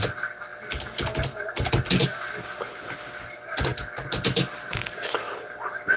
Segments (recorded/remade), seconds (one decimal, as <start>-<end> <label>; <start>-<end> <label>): 0.0-6.0 recorded